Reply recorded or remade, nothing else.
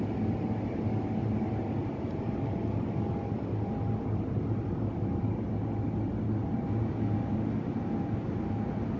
recorded